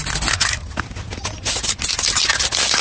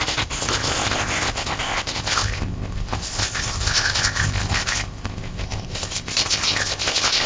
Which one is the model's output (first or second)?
second